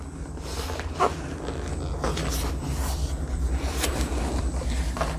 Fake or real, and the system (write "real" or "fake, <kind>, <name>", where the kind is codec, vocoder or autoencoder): real